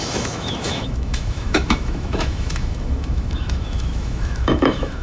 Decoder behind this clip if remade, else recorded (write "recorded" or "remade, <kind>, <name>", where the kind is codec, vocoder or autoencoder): remade, autoencoder, DAC-VAE